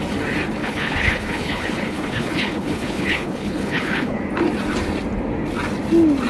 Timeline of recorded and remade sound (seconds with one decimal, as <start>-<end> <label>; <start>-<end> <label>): 0.0-0.6 recorded; 0.6-4.2 remade; 4.2-6.3 recorded